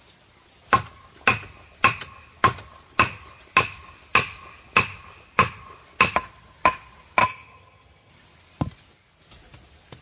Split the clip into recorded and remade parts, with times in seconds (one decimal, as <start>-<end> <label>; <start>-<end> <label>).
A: 0.0-7.2 recorded; 7.2-8.1 remade; 8.1-10.0 recorded

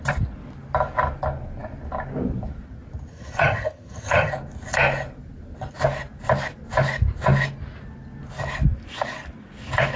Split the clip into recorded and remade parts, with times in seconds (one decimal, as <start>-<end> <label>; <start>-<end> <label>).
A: 0.0-3.1 recorded; 3.1-4.3 remade; 4.3-10.0 recorded

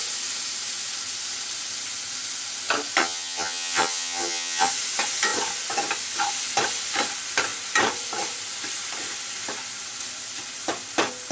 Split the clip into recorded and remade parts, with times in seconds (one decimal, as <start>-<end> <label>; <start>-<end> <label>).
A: 0.0-3.0 recorded; 3.0-4.7 remade; 4.7-11.3 recorded

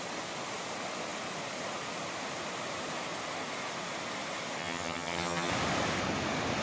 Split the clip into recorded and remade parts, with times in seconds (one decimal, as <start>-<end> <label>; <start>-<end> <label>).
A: 0.0-4.6 recorded; 4.6-5.5 remade; 5.5-6.6 recorded

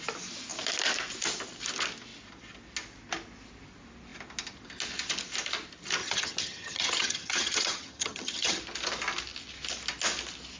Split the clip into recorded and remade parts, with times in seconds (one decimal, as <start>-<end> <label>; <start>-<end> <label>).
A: 0.0-6.0 recorded; 6.0-8.6 remade; 8.6-10.6 recorded